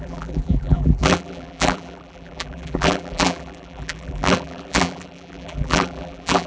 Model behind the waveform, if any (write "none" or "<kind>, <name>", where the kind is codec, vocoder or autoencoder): vocoder, BigVGAN v2